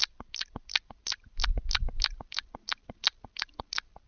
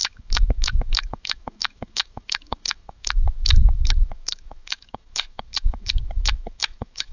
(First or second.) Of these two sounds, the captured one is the first